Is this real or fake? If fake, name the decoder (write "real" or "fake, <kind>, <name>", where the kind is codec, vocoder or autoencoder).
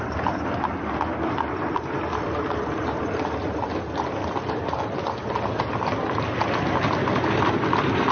real